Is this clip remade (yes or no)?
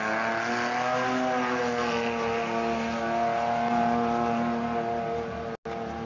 no